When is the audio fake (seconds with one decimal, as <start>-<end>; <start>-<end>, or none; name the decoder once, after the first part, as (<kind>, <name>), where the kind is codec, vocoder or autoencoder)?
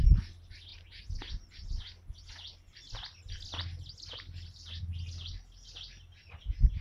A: none